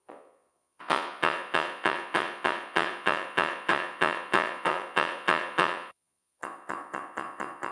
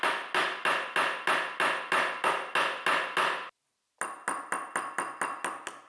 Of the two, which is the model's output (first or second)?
first